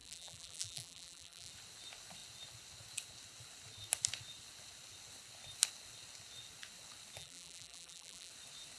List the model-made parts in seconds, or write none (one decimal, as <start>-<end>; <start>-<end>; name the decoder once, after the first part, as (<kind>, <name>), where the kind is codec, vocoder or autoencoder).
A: 0.0-1.5 (vocoder, BigVGAN v2); 7.2-8.3